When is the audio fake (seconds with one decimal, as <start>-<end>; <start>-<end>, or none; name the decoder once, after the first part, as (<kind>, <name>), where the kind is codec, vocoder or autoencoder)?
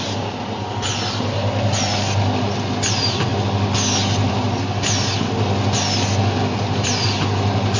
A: none